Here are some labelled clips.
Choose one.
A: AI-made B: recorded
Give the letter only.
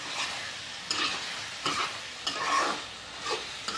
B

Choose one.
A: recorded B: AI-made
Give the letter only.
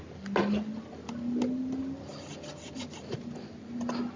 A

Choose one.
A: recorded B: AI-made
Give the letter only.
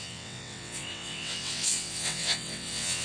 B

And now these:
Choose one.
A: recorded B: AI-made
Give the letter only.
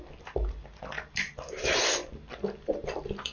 A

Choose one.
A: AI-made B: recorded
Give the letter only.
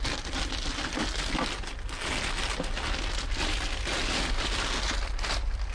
B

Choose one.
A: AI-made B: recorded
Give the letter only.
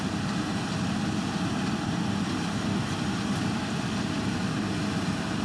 B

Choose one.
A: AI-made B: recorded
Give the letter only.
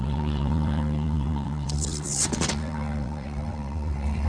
A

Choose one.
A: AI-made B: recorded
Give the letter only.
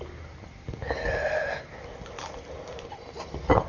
B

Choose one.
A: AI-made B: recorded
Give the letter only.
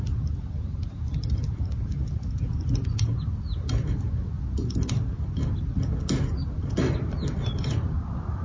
B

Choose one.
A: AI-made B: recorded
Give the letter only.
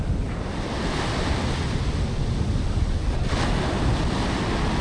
B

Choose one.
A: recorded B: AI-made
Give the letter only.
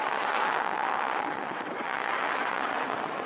B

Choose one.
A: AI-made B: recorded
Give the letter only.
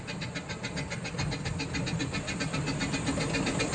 B